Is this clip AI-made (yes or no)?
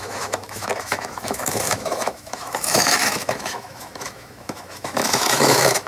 yes